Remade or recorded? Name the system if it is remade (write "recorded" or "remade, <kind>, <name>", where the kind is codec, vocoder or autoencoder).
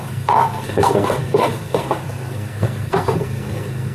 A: remade, codec, SNAC